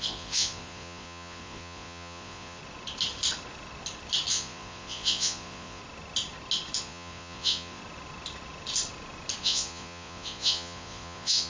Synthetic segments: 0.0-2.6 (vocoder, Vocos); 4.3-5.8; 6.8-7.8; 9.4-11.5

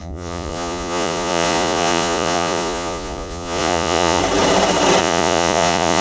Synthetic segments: 0.0-4.2 (vocoder, Vocos); 5.0-6.0

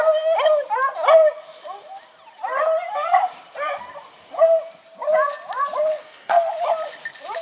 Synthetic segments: 6.0-6.5 (codec, SNAC)